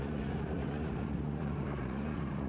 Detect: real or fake fake